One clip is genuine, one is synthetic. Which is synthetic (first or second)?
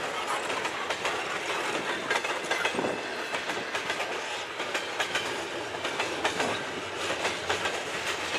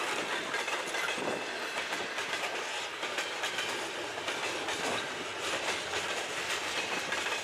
second